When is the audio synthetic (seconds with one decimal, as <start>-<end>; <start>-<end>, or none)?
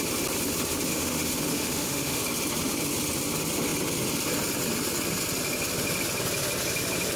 0.9-2.2